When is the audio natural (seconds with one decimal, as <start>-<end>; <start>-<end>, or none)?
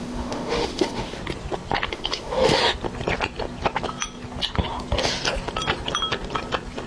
1.2-1.9; 2.6-6.9